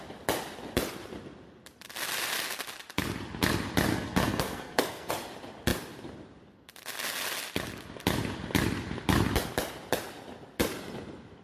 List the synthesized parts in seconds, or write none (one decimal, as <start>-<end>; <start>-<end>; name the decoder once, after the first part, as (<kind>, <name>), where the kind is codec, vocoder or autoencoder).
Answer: 3.9-5.1 (codec, SNAC)